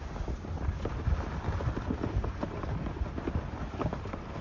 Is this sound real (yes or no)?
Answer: yes